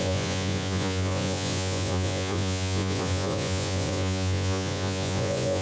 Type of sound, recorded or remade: remade